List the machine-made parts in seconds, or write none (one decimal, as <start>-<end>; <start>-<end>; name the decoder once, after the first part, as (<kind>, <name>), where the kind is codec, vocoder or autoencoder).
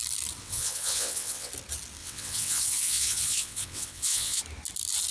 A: 0.4-1.5 (vocoder, WaveNeXt); 2.0-4.4